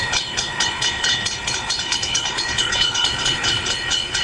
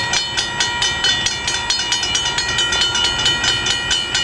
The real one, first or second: second